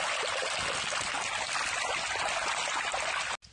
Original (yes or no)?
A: yes